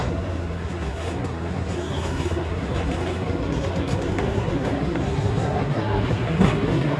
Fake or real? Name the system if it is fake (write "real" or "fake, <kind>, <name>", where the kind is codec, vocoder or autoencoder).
fake, codec, SNAC